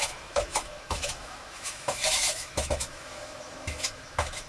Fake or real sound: fake